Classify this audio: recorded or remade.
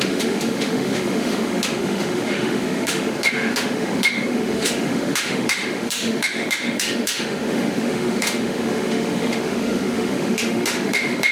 remade